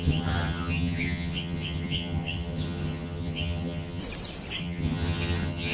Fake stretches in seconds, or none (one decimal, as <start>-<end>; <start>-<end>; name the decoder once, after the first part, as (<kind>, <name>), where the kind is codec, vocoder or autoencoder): 0.0-4.0 (vocoder, HiFi-GAN); 4.6-5.7